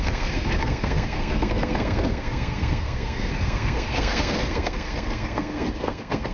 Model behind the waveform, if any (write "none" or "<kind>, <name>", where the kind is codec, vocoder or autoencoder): codec, SNAC